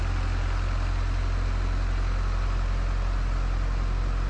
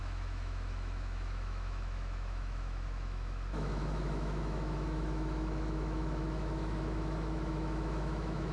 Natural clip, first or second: first